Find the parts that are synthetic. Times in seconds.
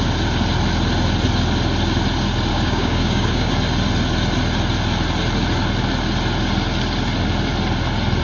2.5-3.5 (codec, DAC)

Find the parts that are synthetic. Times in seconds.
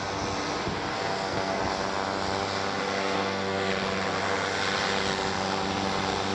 0.9-1.6 (codec, SNAC); 3.0-3.7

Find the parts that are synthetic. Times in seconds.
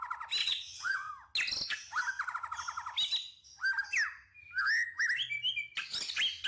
0.4-1.1 (vocoder, WaveNeXt)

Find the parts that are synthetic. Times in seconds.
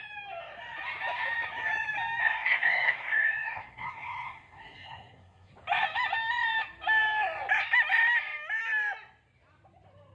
2.2-5.5 (codec, SNAC)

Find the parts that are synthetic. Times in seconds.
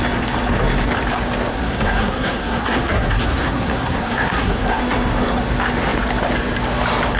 1.5-4.8 (codec, SNAC)